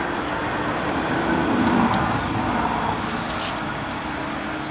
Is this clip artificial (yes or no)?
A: no